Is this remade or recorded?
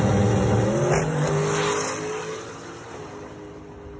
recorded